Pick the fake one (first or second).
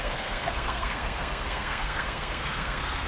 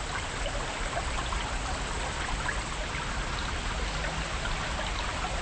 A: first